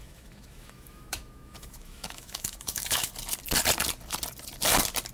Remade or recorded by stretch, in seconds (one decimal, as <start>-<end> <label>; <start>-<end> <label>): 0.0-3.1 remade; 3.1-5.1 recorded